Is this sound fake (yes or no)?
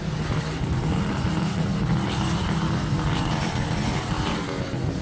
no